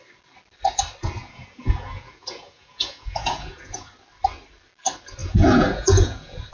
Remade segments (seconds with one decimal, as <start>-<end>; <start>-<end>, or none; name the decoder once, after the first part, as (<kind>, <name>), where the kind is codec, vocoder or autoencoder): 1.2-3.9 (vocoder, Vocos); 5.2-6.5

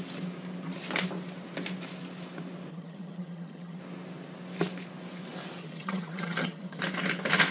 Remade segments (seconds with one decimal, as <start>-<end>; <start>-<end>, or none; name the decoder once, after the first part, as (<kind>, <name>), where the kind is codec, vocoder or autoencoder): 2.7-3.8 (vocoder, HiFi-GAN); 5.6-6.8

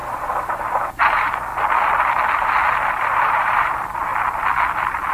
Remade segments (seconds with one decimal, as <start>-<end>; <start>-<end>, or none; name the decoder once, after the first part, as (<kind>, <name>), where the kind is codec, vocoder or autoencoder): 0.5-1.5 (vocoder, BigVGAN v2); 2.9-4.1

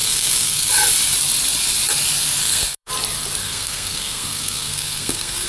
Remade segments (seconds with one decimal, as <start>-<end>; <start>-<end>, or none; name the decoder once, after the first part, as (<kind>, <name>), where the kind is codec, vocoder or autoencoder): 0.0-0.7 (codec, SNAC); 2.4-2.9; 3.4-5.5

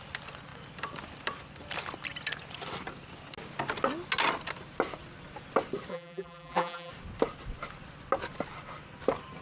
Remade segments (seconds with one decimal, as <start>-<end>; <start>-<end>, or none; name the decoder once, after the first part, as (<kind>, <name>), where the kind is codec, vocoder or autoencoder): 5.9-6.9 (vocoder, BigVGAN v2)

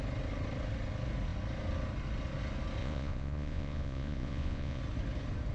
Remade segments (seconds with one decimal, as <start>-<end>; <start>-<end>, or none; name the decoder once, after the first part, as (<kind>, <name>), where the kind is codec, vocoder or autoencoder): 2.8-4.8 (vocoder, Vocos)